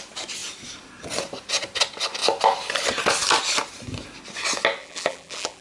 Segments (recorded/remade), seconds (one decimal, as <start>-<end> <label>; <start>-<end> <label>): 0.0-4.8 recorded; 4.8-5.6 remade